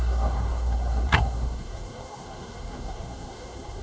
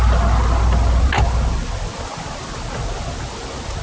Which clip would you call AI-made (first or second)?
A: first